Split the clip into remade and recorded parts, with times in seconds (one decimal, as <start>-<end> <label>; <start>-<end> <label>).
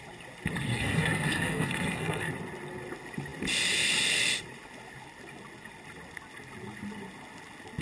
0.0-0.7 recorded; 0.7-2.3 remade; 2.3-7.8 recorded